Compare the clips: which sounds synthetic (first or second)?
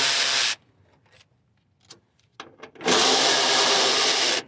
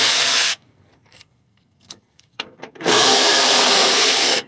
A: second